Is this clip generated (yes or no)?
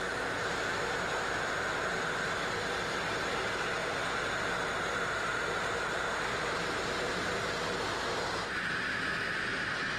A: no